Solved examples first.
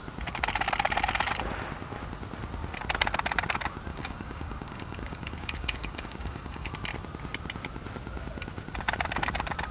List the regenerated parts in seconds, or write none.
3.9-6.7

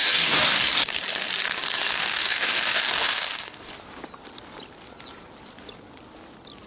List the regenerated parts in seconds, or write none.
0.0-1.0; 2.0-3.7

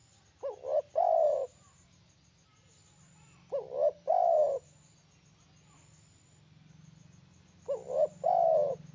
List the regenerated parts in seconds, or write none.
none

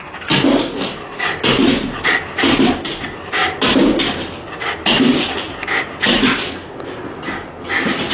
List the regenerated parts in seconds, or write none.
none

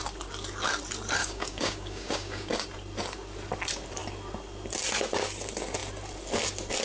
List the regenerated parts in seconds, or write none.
1.2-2.5

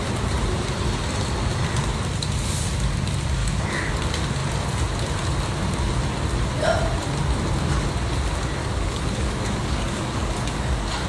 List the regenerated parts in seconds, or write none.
3.4-3.9; 8.6-11.1